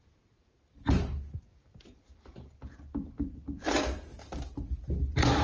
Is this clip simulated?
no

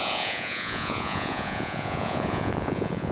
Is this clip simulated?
yes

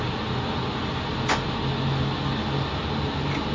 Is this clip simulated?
no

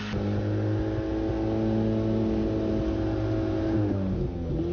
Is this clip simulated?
no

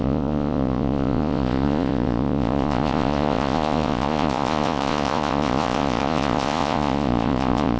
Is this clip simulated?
yes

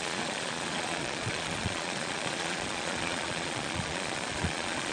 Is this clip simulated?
yes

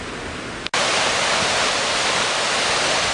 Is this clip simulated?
no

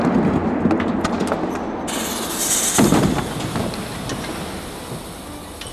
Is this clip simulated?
no